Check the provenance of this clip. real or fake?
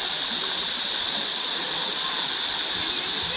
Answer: real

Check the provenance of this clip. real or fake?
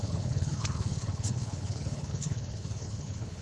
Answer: fake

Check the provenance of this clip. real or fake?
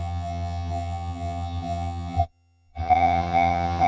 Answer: fake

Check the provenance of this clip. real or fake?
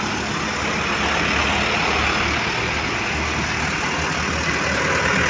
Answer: real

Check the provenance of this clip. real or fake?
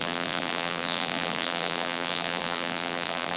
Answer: fake